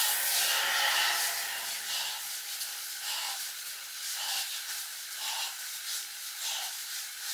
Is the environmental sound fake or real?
real